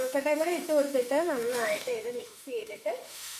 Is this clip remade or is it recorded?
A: remade